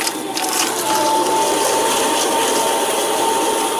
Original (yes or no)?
yes